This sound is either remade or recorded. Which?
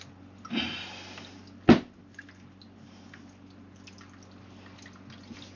recorded